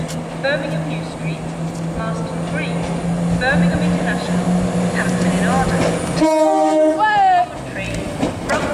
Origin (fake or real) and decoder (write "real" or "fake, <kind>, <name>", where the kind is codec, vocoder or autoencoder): real